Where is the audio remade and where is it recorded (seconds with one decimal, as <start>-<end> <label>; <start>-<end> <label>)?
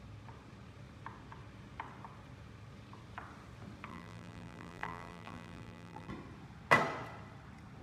0.0-3.9 recorded; 3.9-6.1 remade; 6.1-7.8 recorded